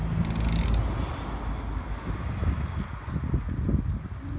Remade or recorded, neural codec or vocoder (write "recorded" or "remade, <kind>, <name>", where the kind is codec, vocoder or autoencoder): recorded